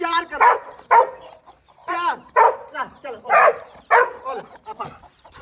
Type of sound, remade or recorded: remade